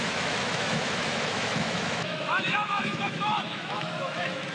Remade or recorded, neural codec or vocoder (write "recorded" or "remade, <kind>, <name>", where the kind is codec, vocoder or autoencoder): remade, autoencoder, DAC-VAE